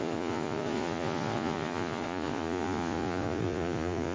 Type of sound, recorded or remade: remade